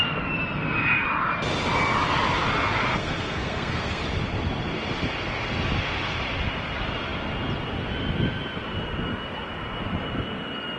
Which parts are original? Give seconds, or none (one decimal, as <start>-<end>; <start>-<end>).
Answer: 0.0-2.9; 4.0-10.8